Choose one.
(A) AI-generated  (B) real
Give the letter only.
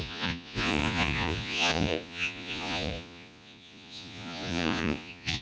A